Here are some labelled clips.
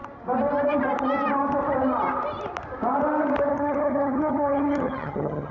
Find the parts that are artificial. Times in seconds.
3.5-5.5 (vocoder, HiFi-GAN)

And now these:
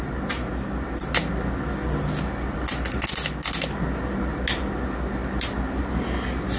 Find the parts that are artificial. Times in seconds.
none

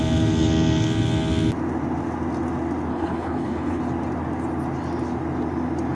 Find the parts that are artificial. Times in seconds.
2.9-3.8 (codec, HILCodec)